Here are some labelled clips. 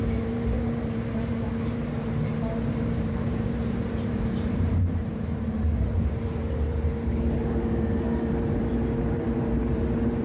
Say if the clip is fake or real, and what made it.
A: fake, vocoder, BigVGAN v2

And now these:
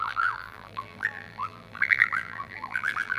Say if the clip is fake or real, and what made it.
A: fake, vocoder, BigVGAN v2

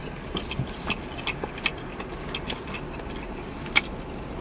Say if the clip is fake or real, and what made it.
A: real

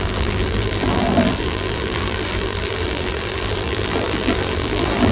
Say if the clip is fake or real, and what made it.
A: fake, vocoder, BigVGAN v2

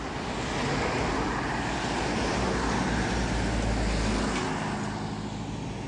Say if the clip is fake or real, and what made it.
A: real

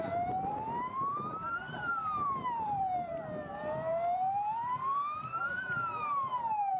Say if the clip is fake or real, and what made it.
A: fake, vocoder, BigVGAN v2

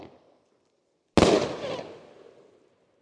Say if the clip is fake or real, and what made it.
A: real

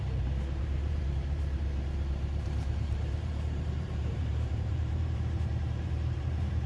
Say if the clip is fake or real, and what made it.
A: fake, vocoder, BigVGAN v2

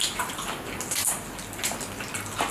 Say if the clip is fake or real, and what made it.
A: real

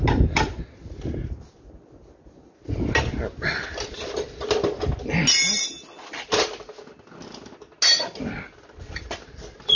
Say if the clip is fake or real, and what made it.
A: real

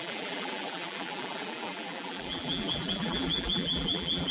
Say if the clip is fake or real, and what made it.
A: fake, vocoder, BigVGAN v2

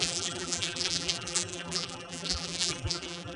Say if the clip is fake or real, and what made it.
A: fake, vocoder, BigVGAN v2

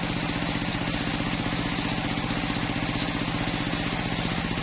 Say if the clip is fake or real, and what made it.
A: real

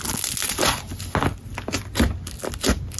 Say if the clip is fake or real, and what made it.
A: real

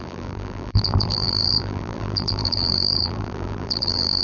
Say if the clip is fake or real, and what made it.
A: fake, vocoder, BigVGAN v2